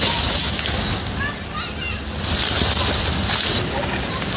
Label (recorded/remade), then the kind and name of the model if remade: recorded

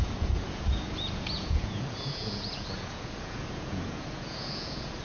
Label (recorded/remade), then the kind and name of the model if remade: remade, vocoder, Vocos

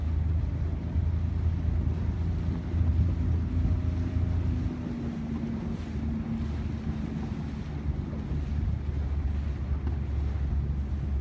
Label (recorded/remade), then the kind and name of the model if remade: recorded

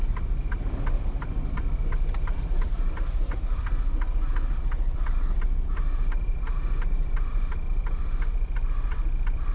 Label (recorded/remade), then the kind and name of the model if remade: remade, vocoder, BigVGAN v2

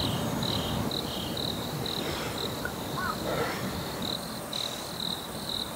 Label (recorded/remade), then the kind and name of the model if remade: recorded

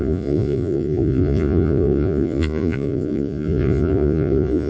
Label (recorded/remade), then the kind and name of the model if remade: remade, vocoder, Vocos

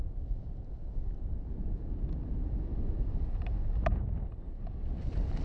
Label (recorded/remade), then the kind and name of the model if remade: recorded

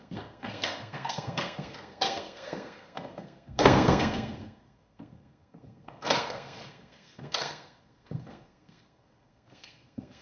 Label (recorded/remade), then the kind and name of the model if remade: remade, codec, SNAC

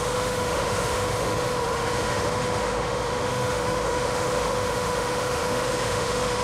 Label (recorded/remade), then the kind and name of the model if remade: remade, autoencoder, DAC-VAE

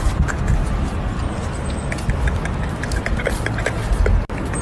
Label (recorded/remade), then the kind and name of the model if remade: recorded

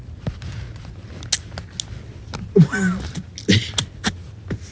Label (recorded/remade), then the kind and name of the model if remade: recorded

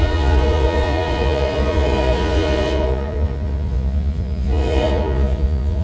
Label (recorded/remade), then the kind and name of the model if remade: remade, vocoder, Vocos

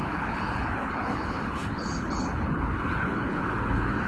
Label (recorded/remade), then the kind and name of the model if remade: remade, codec, HILCodec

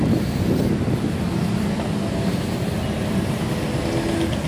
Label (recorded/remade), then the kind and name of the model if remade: recorded